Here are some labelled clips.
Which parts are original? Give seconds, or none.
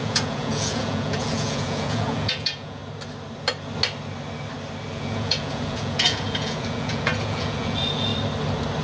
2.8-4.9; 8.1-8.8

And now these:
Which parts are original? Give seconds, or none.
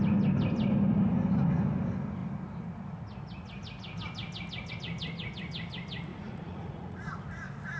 0.0-6.1; 7.1-7.8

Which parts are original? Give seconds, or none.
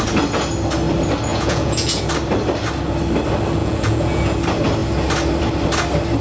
0.0-1.3; 2.0-3.6; 4.2-6.2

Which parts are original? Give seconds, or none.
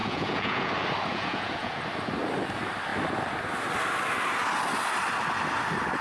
0.7-1.1; 1.8-6.0